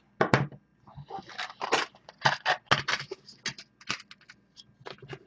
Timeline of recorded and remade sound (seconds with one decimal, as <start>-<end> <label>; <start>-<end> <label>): 0.0-5.3 recorded